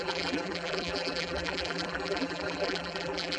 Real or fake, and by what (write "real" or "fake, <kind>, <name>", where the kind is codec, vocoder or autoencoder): fake, vocoder, BigVGAN v2